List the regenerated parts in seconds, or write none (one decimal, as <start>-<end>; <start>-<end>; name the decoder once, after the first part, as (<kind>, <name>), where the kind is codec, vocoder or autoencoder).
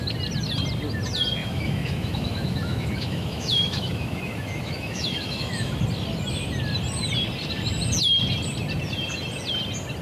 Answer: 1.4-5.8 (autoencoder, DAC-VAE)